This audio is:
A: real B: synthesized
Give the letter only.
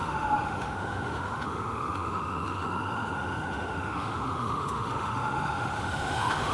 B